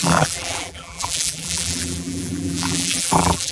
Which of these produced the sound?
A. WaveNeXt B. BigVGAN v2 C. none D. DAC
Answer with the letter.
B